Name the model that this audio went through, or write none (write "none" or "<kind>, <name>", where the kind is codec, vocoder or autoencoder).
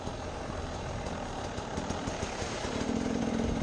vocoder, BigVGAN v2